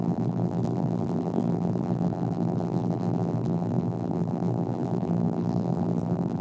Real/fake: fake